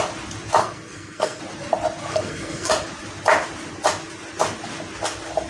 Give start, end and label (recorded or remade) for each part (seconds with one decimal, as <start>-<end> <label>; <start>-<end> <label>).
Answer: 0.0-0.6 recorded; 0.6-1.4 remade; 1.4-2.1 recorded; 2.1-2.7 remade; 2.7-5.5 recorded